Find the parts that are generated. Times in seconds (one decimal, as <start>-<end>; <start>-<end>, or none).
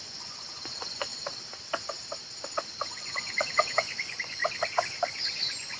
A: 0.0-1.1; 2.8-4.4; 4.9-5.8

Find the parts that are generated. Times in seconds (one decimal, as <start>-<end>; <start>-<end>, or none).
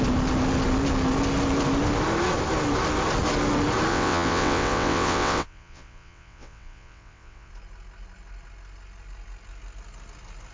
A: 3.9-7.5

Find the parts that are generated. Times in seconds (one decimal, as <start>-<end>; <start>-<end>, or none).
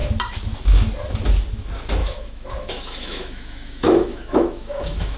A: 2.0-5.2